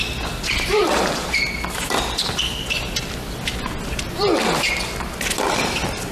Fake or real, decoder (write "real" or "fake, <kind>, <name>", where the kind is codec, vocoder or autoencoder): real